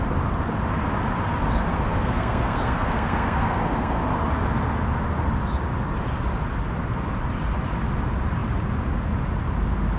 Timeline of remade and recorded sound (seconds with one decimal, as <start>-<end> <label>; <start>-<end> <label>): 0.0-1.7 recorded; 1.7-4.0 remade; 4.0-10.0 recorded